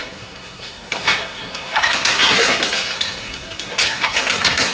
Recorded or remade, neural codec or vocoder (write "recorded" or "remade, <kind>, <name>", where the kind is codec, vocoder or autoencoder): remade, codec, SNAC